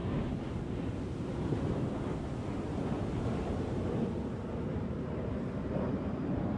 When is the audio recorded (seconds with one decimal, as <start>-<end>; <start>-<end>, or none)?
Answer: 0.0-4.7